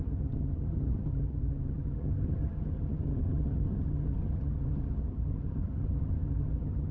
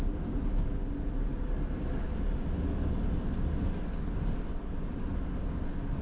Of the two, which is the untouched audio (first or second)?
second